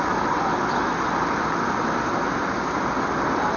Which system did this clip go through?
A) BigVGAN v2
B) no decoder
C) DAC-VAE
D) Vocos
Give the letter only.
B